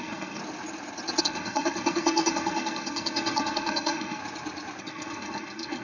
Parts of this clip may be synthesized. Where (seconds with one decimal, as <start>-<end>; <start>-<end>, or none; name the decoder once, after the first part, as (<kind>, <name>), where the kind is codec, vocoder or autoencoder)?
0.0-0.4 (codec, SNAC); 1.2-4.2; 4.8-5.8